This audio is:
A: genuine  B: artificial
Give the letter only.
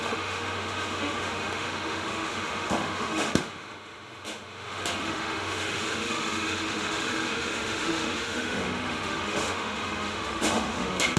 B